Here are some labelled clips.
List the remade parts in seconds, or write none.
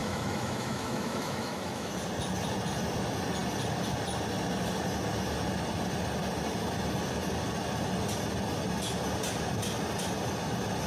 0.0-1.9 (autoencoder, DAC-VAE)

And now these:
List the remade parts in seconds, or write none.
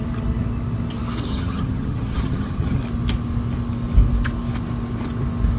1.3-2.8 (vocoder, HiFi-GAN)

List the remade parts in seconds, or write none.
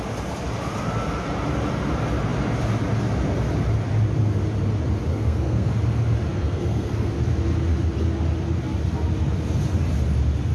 5.1-5.7 (codec, SNAC); 6.3-7.1